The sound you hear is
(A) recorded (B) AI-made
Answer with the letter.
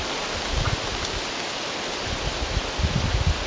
A